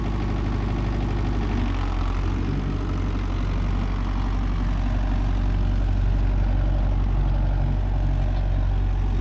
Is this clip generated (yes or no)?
no